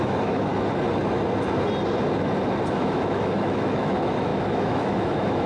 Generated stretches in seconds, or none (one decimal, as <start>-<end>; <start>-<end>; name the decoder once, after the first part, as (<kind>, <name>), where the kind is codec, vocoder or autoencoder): 0.0-0.5 (autoencoder, DAC-VAE); 2.7-5.5